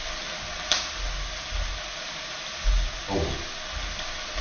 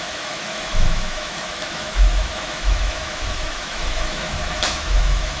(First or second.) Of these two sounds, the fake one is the second